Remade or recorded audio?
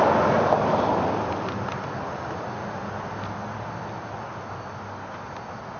recorded